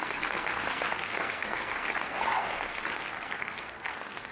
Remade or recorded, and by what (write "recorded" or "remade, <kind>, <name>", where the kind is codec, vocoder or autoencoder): remade, codec, SNAC